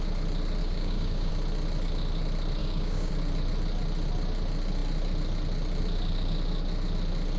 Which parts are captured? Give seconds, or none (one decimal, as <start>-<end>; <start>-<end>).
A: 0.0-0.6; 1.3-2.6; 3.1-7.4